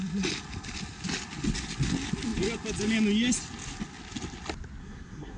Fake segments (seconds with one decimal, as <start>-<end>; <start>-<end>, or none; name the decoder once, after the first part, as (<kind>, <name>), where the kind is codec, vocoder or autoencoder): 4.8-5.4 (codec, SNAC)